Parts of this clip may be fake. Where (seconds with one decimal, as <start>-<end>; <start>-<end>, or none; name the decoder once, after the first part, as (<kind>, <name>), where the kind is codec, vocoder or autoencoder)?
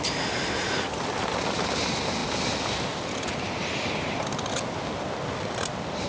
none